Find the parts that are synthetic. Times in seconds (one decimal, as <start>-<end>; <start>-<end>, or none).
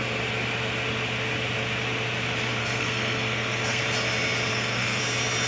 2.6-3.8; 4.5-5.0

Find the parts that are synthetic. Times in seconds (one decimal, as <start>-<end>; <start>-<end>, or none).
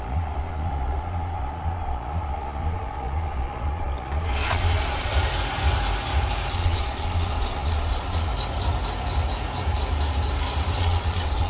0.0-5.1; 6.5-8.3; 10.8-11.5